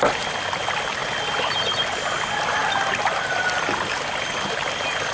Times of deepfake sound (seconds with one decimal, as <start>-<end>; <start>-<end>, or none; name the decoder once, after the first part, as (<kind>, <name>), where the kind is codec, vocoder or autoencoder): none